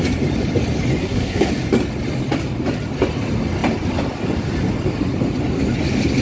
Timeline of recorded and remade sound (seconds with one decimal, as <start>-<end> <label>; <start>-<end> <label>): 0.0-1.0 recorded; 1.0-1.5 remade; 1.5-6.2 recorded